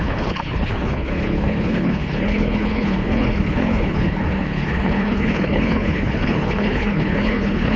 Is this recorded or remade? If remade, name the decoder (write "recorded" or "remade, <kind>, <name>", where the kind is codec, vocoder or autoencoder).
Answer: remade, codec, HILCodec